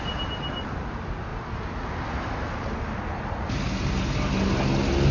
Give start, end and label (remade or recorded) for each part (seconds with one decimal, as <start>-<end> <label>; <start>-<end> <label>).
0.0-5.1 recorded